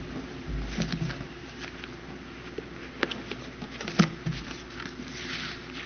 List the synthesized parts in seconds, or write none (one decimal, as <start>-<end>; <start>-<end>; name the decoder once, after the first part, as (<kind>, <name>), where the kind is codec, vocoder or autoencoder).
none